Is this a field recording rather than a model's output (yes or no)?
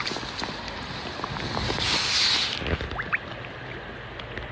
yes